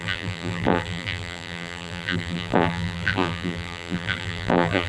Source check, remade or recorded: remade